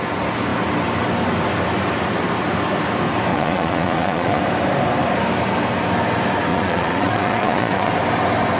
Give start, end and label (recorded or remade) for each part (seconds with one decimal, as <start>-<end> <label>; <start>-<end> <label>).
0.0-3.3 recorded; 3.3-4.4 remade; 4.4-6.5 recorded; 6.5-7.9 remade; 7.9-8.6 recorded